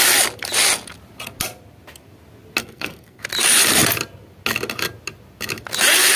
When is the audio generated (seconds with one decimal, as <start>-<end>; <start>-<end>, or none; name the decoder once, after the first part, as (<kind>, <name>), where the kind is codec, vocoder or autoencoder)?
2.6-3.2 (codec, SNAC)